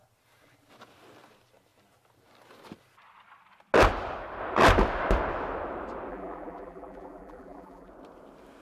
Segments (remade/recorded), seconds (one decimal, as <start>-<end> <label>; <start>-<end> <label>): 0.0-6.1 recorded; 6.1-7.9 remade; 7.9-8.6 recorded